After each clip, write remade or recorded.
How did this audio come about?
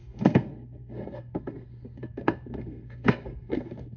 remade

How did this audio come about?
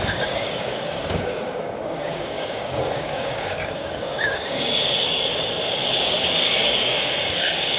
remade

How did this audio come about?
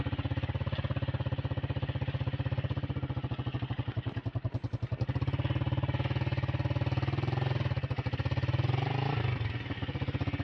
recorded